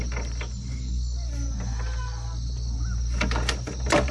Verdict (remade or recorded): recorded